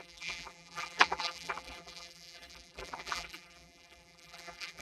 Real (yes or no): no